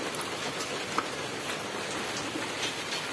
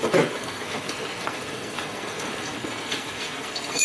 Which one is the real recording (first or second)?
first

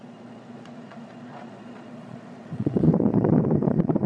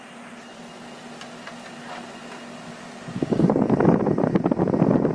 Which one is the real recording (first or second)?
second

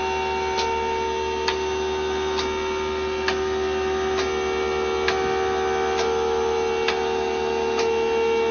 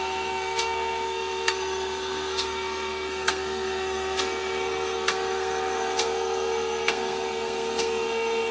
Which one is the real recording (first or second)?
first